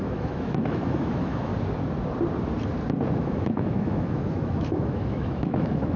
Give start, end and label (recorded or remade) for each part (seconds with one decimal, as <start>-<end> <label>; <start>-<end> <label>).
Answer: 0.0-1.5 remade; 1.5-3.2 recorded; 3.2-6.0 remade

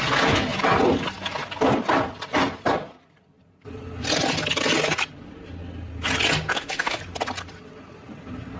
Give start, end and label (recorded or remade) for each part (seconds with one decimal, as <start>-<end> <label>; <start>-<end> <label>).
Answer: 0.0-6.5 recorded; 6.5-7.0 remade; 7.0-8.6 recorded

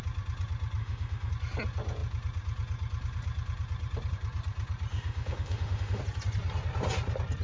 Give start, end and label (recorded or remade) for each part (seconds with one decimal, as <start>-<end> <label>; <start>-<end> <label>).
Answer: 0.0-0.8 recorded; 0.8-1.3 remade; 1.3-4.9 recorded; 4.9-6.0 remade; 6.0-7.4 recorded

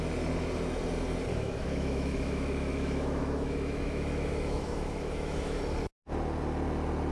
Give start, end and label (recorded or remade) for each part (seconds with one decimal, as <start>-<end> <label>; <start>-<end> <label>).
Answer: 0.0-1.3 recorded; 1.3-5.6 remade; 5.6-7.1 recorded

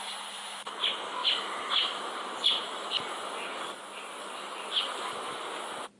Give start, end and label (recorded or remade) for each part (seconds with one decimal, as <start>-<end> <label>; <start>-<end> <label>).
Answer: 0.0-6.0 recorded